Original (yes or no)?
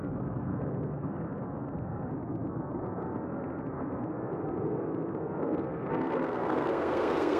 no